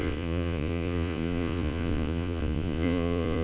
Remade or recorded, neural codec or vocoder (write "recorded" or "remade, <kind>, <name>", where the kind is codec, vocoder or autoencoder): remade, vocoder, Vocos